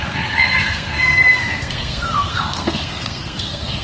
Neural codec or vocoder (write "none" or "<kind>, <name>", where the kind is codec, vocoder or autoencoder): codec, SNAC